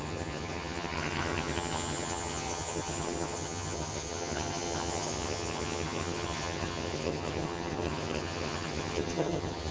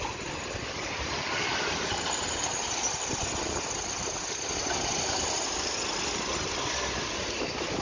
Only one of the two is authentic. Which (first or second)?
second